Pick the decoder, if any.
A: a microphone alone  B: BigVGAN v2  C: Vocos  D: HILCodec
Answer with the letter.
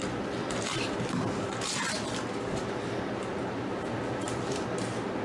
A